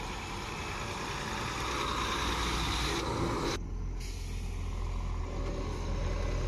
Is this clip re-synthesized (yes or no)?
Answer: no